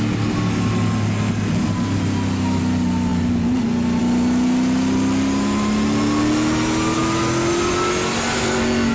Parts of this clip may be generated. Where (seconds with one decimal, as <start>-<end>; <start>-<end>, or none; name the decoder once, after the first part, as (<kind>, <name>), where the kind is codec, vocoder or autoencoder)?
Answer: none

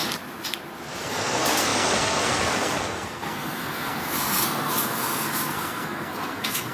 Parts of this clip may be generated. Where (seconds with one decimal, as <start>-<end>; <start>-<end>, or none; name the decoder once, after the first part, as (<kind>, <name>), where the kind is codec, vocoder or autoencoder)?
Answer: 1.0-6.7 (codec, SNAC)

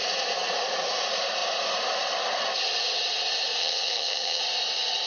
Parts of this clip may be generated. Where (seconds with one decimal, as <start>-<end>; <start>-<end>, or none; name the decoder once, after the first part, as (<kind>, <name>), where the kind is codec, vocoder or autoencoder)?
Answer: 3.6-4.4 (vocoder, HiFi-GAN)

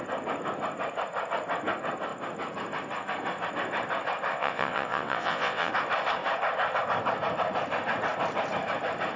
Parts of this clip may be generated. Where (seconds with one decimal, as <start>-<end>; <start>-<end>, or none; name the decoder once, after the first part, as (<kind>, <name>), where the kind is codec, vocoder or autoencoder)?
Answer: 4.3-5.7 (vocoder, WaveNeXt)

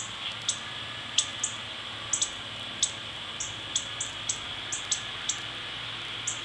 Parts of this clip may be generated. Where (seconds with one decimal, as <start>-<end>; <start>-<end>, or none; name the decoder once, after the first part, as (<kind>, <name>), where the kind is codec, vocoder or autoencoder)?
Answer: none

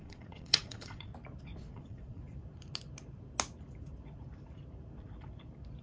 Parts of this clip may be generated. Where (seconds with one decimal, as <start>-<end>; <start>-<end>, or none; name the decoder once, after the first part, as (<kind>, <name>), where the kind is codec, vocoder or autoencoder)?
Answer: 0.0-1.1 (vocoder, Vocos); 1.7-2.2

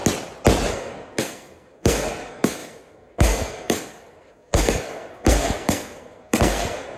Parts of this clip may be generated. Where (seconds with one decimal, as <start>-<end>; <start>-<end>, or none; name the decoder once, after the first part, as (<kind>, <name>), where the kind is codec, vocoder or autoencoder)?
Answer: 0.7-7.0 (codec, SNAC)